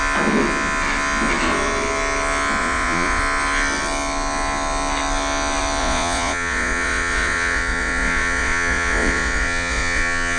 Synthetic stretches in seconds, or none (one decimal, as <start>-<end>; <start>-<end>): 2.6-3.2; 5.8-10.4